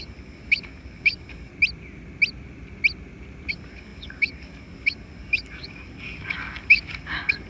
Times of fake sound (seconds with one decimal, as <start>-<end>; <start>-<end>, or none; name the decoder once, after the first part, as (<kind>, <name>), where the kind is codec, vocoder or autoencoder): 0.0-1.5 (codec, DAC); 3.5-7.5